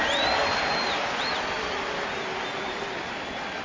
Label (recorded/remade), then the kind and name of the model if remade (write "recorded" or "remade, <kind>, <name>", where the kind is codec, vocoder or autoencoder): recorded